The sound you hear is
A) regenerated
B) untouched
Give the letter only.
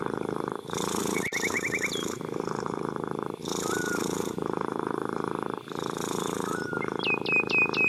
A